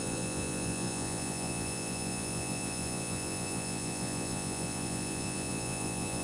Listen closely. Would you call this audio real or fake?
fake